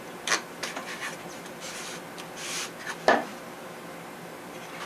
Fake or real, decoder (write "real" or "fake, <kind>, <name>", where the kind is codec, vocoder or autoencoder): real